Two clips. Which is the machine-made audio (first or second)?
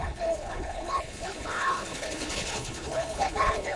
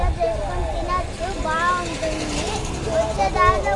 first